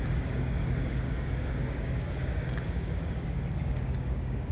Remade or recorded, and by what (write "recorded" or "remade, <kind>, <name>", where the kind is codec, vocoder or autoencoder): remade, codec, DAC